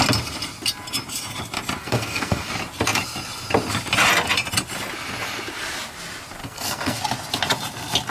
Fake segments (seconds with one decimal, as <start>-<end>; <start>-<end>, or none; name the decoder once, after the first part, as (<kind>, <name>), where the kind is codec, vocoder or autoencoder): 1.8-2.5 (codec, SNAC); 6.4-7.0